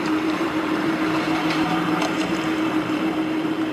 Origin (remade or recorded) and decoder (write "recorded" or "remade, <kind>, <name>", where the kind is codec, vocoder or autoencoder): remade, vocoder, BigVGAN v2